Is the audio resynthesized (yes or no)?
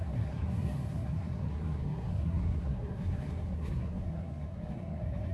yes